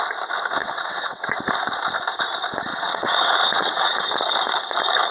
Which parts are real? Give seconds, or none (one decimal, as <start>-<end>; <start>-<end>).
0.0-0.6; 1.3-2.7; 3.9-5.1